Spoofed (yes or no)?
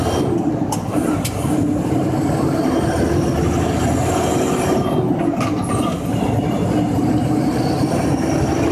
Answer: no